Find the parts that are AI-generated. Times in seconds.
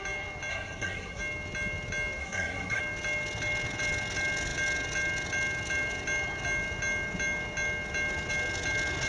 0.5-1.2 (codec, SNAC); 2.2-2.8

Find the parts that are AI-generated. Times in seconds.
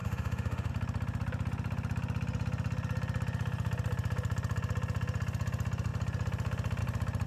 0.0-0.7 (autoencoder, DAC-VAE)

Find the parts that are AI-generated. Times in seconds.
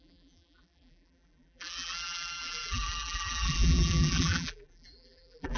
0.0-5.6 (vocoder, BigVGAN v2)